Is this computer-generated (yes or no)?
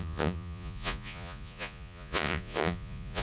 yes